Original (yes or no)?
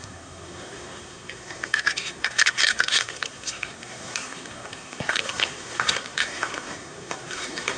no